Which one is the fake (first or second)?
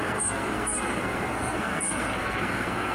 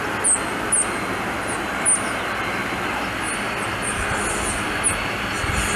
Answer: first